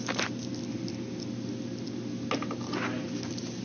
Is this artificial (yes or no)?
no